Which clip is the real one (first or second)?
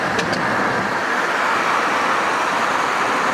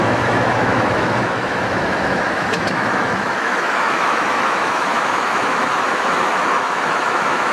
first